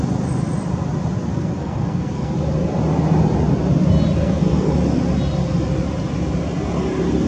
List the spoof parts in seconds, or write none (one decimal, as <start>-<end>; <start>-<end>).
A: 1.3-2.3; 4.2-4.7